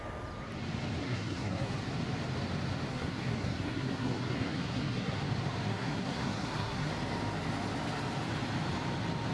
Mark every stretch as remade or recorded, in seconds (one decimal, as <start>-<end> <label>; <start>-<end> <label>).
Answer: 0.0-1.0 recorded; 1.0-1.7 remade; 1.7-2.9 recorded; 2.9-5.2 remade; 5.2-5.7 recorded; 5.7-6.9 remade; 6.9-9.3 recorded